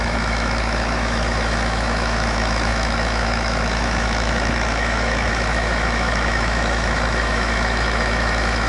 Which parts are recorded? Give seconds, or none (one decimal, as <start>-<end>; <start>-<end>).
none